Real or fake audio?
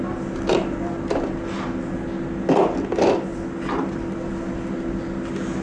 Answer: real